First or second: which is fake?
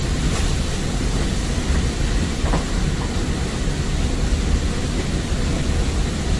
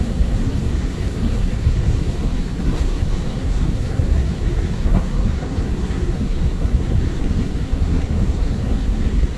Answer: second